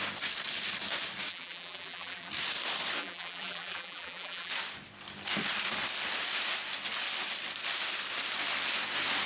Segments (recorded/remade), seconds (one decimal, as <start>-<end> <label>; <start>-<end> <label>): 0.0-1.3 recorded; 1.3-2.3 remade; 2.3-3.0 recorded; 3.0-4.5 remade; 4.5-9.3 recorded